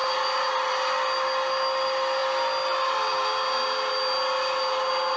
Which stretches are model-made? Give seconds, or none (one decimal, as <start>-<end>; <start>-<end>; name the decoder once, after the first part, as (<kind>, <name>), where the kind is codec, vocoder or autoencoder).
none